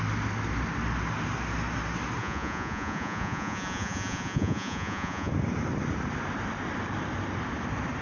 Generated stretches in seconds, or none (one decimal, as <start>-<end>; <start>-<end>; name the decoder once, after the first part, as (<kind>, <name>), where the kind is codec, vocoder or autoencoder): 2.2-5.3 (vocoder, Vocos)